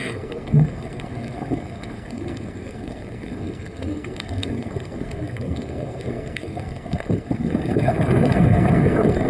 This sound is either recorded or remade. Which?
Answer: remade